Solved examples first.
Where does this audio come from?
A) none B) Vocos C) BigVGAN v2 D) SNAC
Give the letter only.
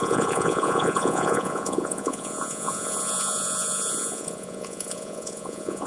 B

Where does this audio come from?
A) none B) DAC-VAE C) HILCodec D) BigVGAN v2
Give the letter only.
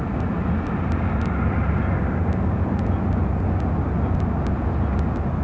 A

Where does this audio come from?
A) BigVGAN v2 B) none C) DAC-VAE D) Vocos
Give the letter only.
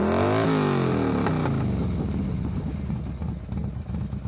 B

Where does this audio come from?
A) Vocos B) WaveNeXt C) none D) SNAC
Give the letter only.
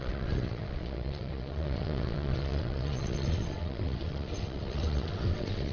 B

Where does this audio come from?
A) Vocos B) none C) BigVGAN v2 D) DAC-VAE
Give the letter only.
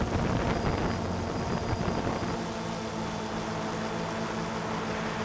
B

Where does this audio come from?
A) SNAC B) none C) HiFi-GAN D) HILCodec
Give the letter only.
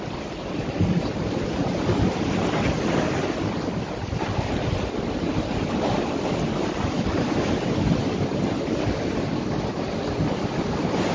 B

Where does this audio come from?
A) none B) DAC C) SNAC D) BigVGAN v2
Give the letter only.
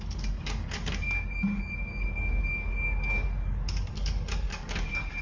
B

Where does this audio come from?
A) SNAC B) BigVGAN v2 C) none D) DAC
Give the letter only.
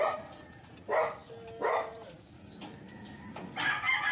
C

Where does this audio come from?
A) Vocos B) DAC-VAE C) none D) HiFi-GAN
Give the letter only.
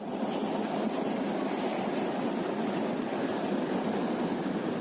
C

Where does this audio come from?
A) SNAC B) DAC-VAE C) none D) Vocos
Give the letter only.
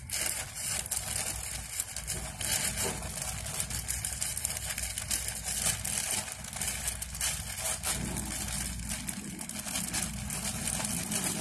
C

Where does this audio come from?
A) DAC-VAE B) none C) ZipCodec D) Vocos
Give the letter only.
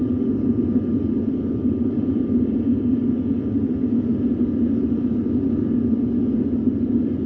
B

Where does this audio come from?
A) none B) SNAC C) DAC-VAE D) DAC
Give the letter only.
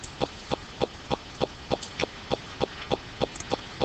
A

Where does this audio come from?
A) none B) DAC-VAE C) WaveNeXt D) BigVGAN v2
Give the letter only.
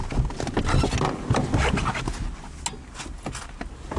A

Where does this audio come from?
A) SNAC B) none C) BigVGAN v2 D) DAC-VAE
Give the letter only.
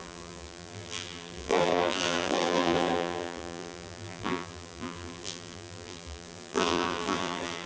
C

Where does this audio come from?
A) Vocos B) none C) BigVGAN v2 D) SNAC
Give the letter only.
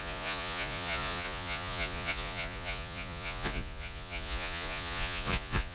A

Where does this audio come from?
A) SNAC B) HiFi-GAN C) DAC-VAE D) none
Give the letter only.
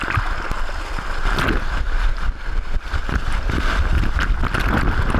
D